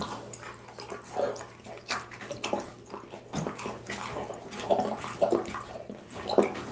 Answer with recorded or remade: recorded